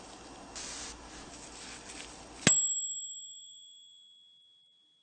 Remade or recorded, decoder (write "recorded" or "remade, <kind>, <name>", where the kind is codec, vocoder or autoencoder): recorded